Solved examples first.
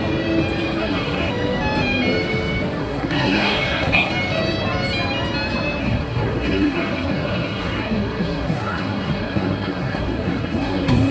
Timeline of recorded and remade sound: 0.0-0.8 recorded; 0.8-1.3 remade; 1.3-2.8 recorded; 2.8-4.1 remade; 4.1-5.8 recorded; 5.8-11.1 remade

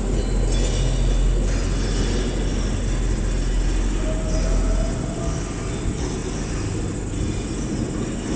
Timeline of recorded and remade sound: 0.0-8.4 recorded